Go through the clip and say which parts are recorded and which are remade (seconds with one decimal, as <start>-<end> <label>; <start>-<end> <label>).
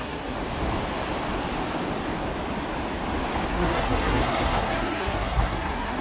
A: 0.0-0.4 remade; 0.4-3.5 recorded; 3.5-6.0 remade